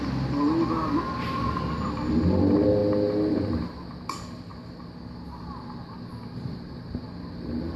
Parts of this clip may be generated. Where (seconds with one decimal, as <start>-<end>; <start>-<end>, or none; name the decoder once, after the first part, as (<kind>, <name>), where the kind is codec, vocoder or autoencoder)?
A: 0.0-2.8 (vocoder, BigVGAN v2); 3.4-4.5; 6.7-7.8